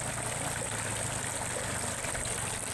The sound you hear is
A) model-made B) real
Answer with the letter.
B